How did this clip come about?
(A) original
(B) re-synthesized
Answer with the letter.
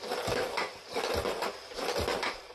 A